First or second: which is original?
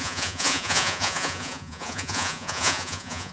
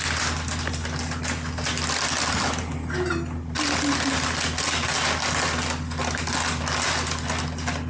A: second